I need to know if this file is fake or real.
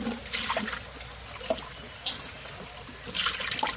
real